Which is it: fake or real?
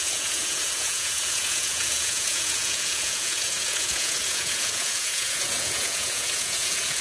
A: fake